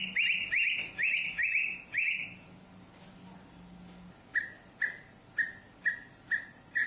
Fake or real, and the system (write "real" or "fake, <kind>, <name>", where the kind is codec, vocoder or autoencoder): real